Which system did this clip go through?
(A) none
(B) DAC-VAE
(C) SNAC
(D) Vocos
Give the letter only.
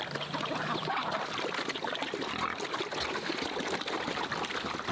A